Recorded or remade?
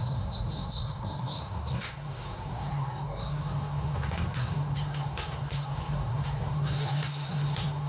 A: remade